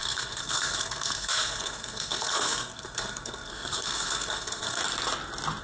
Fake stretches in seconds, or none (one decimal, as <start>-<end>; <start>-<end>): 0.0-4.8